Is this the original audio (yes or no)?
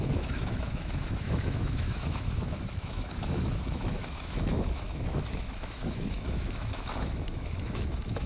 no